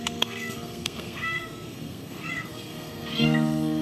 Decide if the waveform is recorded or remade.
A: remade